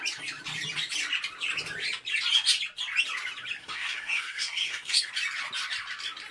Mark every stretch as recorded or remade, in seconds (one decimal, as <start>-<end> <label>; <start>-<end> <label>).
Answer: 0.0-3.6 recorded; 3.6-5.1 remade; 5.1-6.3 recorded